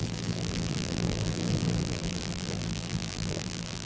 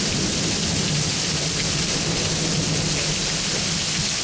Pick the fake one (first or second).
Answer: first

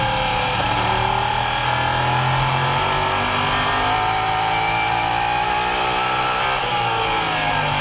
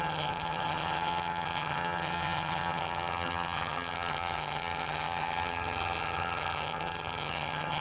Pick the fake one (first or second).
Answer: second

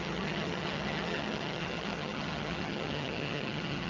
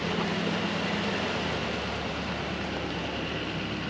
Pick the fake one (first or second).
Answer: first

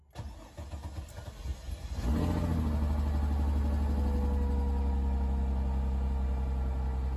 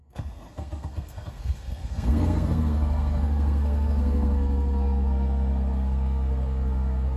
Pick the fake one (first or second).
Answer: second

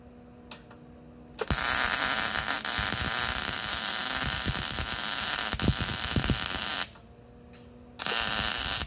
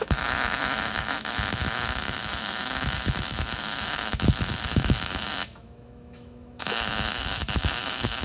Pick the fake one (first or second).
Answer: second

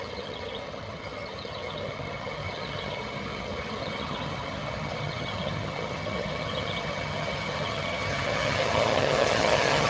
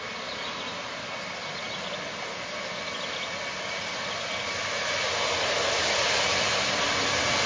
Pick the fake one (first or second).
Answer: first